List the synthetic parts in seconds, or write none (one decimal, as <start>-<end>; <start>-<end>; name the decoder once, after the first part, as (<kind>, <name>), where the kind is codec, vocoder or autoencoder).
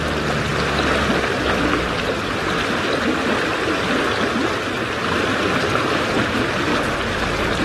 6.7-7.6 (vocoder, BigVGAN v2)